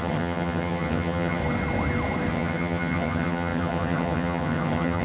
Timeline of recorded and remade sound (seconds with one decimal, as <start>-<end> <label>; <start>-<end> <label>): 0.0-1.4 remade; 1.4-2.3 recorded; 2.3-5.0 remade

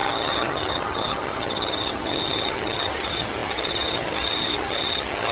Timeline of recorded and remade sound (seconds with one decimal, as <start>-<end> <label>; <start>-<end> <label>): 0.0-5.3 remade

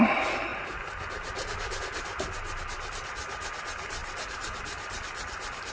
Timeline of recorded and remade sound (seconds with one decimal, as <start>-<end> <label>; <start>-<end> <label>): 0.0-5.7 recorded